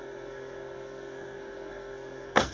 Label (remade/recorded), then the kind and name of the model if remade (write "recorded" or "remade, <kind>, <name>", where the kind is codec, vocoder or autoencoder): remade, codec, SNAC